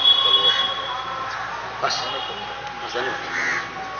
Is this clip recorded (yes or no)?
yes